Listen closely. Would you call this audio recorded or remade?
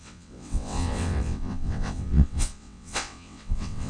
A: remade